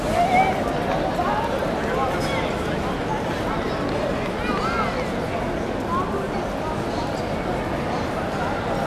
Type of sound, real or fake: real